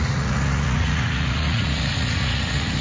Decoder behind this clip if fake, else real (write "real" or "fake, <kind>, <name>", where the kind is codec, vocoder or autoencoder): fake, vocoder, Vocos